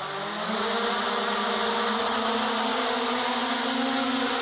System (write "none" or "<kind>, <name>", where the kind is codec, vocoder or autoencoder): none